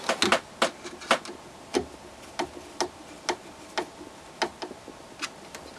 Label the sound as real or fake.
real